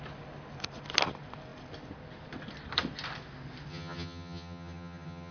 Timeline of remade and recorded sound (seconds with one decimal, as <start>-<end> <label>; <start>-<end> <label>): 0.0-3.7 recorded; 3.7-5.3 remade